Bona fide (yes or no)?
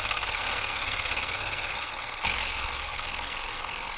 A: no